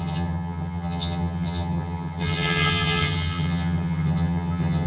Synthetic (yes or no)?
yes